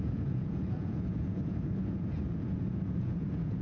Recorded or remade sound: remade